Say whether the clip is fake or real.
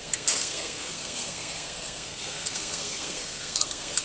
fake